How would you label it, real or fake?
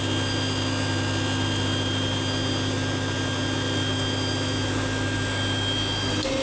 fake